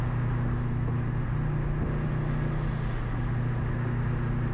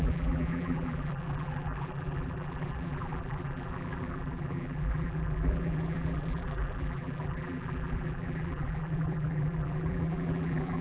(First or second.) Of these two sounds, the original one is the first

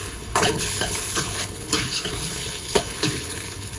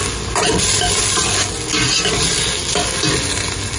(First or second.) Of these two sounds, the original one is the second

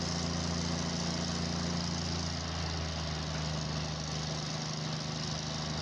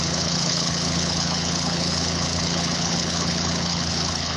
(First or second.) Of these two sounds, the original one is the first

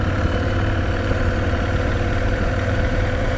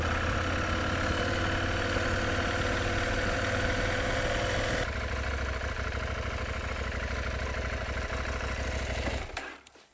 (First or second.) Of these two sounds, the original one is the second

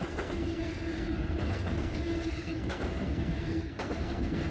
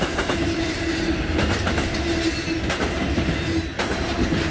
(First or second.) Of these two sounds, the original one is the second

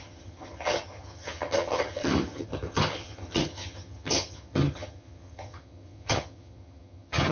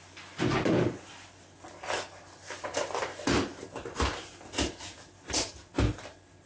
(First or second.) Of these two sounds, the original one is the second